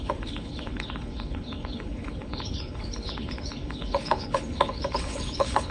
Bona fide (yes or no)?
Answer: no